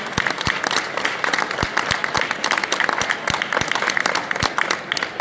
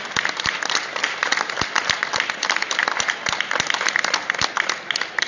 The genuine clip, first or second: first